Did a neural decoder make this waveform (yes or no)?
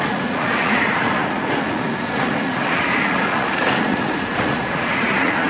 yes